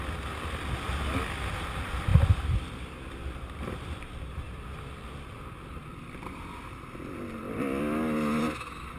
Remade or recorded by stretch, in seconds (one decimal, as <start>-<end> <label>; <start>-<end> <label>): 0.0-2.1 recorded; 2.1-6.8 remade; 6.8-9.0 recorded